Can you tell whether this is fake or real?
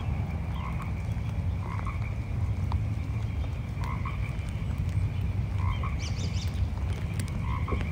real